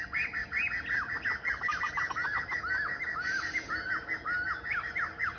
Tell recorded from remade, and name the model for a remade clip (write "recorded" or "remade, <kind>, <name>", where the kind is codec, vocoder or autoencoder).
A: recorded